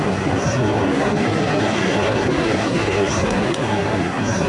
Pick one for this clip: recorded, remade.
remade